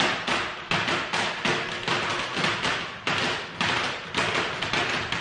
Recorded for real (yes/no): yes